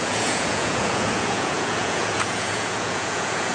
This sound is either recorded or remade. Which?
remade